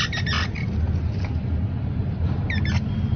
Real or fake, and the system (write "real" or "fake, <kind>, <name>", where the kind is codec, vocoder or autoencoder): real